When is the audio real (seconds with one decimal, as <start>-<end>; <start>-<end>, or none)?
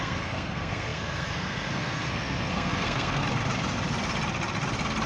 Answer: 3.2-5.1